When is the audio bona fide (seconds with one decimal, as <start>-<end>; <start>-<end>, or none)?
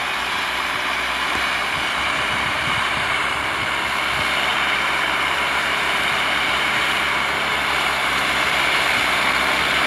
3.2-4.5; 9.2-9.9